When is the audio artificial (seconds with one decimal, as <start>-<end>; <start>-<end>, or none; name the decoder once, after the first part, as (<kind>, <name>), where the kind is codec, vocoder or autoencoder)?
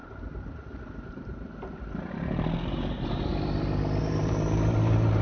0.0-1.5 (vocoder, BigVGAN v2); 2.1-3.3; 4.0-5.2